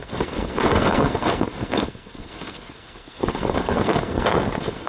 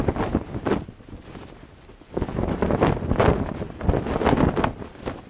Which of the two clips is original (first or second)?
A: second